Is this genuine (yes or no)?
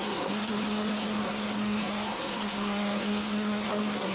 no